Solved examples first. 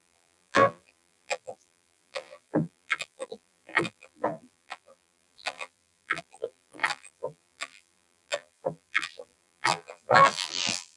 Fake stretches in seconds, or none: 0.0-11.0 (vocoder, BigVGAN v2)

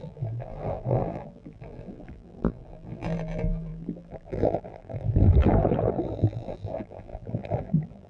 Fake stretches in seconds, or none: 0.0-8.1 (vocoder, BigVGAN v2)

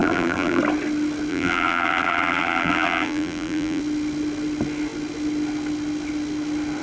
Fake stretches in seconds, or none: 0.0-0.6 (vocoder, BigVGAN v2); 1.3-3.8

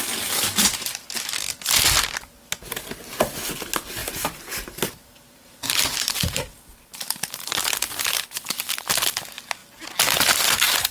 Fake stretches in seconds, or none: 4.0-7.6 (vocoder, BigVGAN v2)